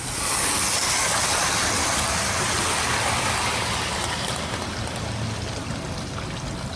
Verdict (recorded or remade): recorded